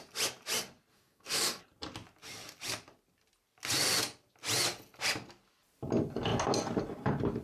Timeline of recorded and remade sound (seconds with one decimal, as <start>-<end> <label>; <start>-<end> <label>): 0.0-0.9 recorded; 0.9-1.6 remade; 1.6-7.4 recorded